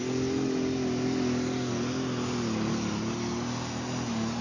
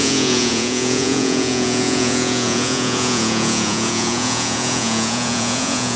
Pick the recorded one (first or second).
first